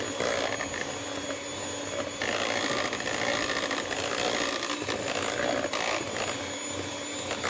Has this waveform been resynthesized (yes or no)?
no